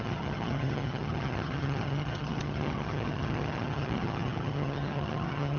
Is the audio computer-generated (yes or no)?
yes